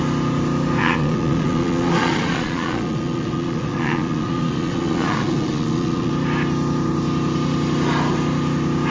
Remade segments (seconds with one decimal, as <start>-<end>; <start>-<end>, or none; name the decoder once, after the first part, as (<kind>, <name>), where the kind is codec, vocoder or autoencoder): 0.8-6.1 (vocoder, Vocos)